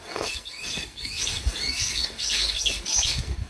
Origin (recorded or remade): remade